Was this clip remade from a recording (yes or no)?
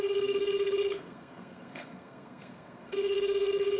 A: yes